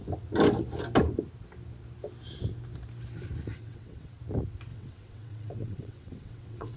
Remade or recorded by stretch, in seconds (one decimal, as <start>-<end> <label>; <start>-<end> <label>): 0.0-3.5 recorded; 3.5-4.2 remade; 4.2-4.7 recorded; 4.7-6.8 remade